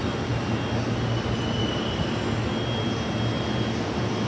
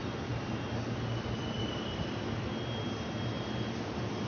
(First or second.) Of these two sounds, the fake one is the second